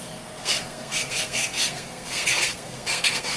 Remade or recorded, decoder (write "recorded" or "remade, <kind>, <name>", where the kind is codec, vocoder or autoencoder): remade, codec, SNAC